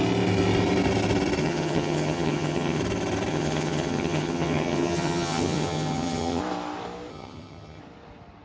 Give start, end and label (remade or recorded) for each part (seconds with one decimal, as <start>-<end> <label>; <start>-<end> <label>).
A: 0.0-1.4 recorded; 1.4-2.8 remade; 2.8-3.3 recorded; 3.3-6.4 remade; 6.4-7.1 recorded; 7.1-7.8 remade; 7.8-8.4 recorded